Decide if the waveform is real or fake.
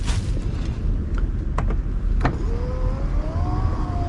real